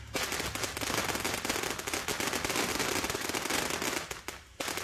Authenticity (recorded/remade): recorded